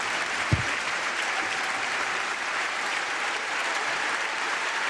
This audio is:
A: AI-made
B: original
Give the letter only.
A